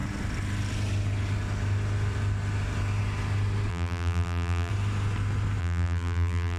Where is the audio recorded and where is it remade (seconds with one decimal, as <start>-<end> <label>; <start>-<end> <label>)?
0.0-3.7 recorded; 3.7-4.7 remade; 4.7-5.6 recorded; 5.6-6.6 remade